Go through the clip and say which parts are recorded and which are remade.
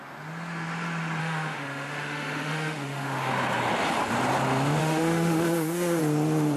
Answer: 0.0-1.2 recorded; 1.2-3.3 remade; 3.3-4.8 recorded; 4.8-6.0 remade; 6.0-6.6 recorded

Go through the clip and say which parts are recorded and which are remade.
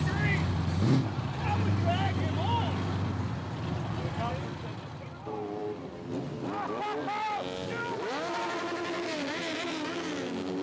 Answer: 0.0-10.6 recorded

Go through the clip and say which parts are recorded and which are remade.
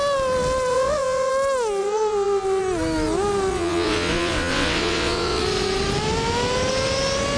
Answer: 0.0-0.7 recorded; 0.7-1.3 remade; 1.3-1.8 recorded; 1.8-2.6 remade; 2.6-3.5 recorded; 3.5-5.4 remade; 5.4-7.4 recorded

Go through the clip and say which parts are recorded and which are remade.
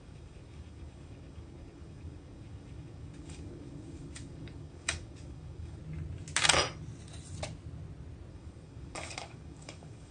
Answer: 0.0-5.8 remade; 5.8-8.3 recorded; 8.3-10.1 remade